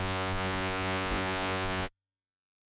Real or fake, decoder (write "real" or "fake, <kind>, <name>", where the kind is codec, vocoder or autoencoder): fake, vocoder, Vocos